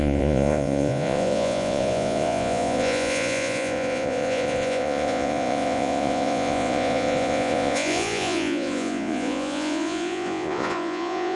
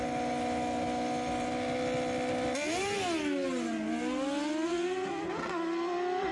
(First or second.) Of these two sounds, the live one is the second